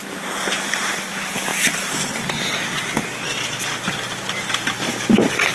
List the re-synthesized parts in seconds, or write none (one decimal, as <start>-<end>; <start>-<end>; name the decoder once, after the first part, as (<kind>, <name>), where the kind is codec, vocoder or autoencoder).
0.0-5.5 (vocoder, BigVGAN v2)